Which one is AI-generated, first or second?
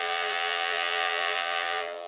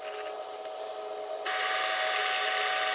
first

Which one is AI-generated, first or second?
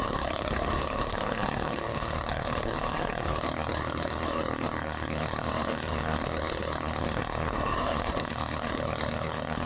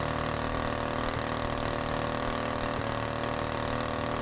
first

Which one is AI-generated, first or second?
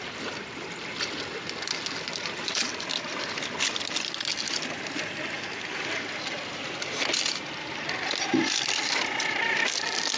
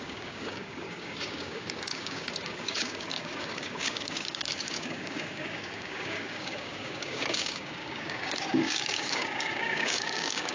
second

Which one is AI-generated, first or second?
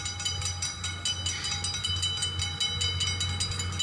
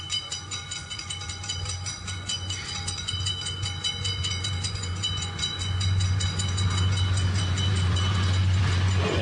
second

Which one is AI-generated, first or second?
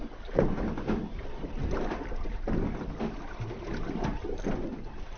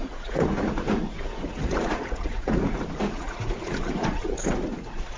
second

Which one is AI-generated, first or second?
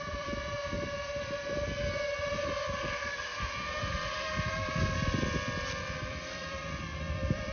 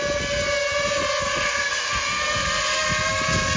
first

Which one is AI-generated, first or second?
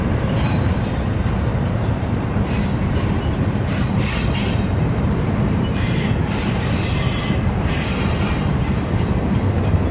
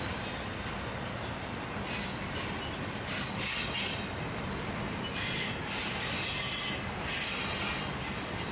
first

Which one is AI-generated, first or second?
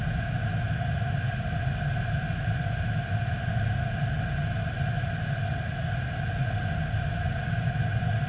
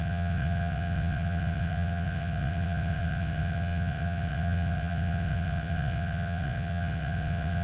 second